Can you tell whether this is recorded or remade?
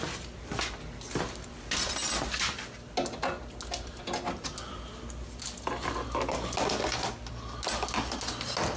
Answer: recorded